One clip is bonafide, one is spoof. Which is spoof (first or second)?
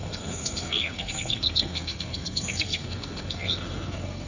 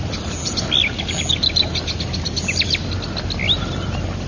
first